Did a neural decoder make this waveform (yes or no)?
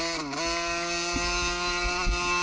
no